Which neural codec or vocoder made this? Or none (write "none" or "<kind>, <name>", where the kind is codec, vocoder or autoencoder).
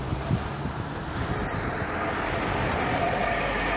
none